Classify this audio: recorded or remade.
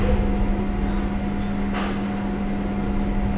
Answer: recorded